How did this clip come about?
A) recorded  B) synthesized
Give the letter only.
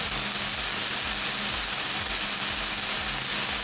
A